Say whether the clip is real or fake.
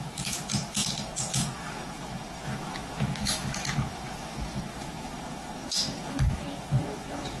fake